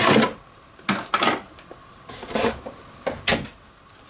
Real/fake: real